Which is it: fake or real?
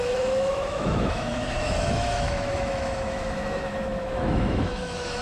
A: fake